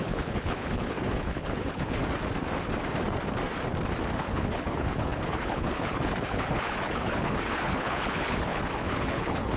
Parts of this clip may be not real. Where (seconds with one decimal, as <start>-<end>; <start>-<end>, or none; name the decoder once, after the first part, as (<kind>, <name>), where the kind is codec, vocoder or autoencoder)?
0.0-2.0 (codec, HILCodec); 4.2-9.6